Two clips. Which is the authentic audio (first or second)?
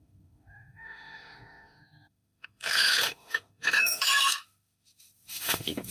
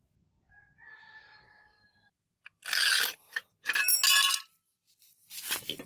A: second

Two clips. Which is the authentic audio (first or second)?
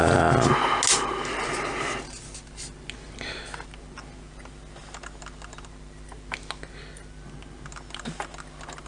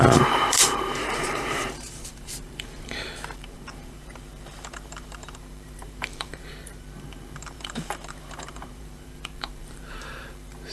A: first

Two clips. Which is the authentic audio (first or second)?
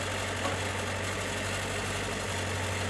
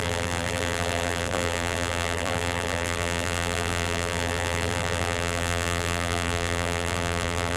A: first